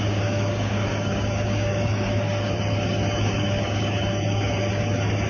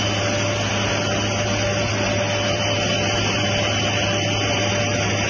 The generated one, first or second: first